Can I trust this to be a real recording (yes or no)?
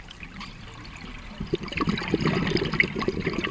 yes